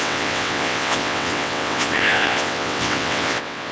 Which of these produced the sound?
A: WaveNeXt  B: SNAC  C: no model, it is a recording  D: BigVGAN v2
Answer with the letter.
A